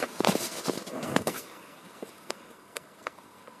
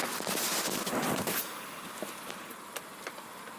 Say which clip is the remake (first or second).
first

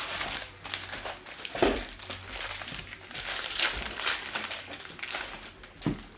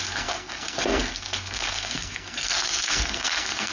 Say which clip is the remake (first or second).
second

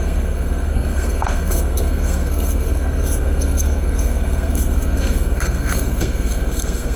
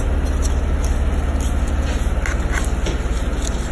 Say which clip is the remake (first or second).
first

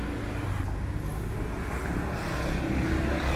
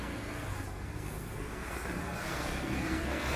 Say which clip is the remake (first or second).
second